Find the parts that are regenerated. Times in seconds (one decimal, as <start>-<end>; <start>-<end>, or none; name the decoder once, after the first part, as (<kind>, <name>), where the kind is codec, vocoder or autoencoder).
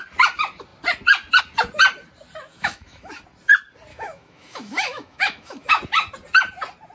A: 2.5-3.1 (autoencoder, DAC-VAE); 3.9-5.7